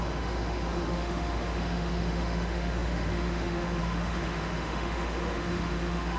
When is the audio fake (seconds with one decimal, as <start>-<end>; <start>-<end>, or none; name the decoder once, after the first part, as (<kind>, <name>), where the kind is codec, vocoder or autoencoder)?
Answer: 0.0-6.2 (autoencoder, DAC-VAE)